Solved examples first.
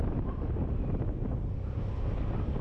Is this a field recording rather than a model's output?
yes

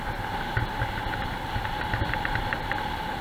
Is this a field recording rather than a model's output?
yes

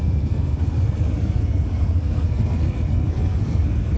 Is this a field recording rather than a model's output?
no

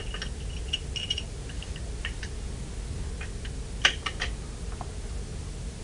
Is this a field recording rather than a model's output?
yes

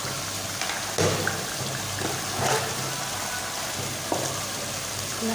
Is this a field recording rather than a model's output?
yes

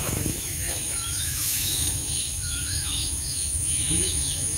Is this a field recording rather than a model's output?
no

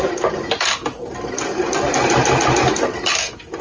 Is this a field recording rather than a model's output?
yes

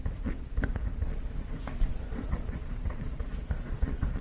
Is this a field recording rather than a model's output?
no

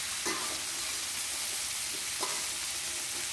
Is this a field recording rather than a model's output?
yes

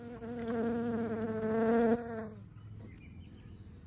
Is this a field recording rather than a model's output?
yes